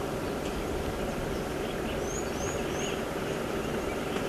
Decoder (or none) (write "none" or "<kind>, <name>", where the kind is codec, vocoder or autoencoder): none